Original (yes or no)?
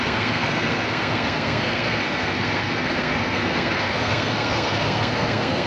no